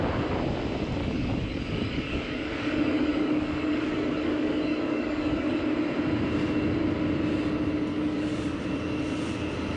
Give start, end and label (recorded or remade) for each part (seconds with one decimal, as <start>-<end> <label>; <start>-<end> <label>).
0.0-1.0 recorded; 1.0-5.6 remade; 5.6-7.9 recorded; 7.9-8.6 remade; 8.6-9.8 recorded